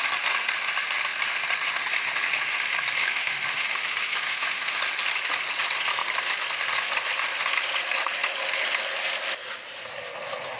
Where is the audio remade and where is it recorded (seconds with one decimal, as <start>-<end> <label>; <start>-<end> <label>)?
0.0-3.0 recorded; 3.0-4.8 remade; 4.8-10.6 recorded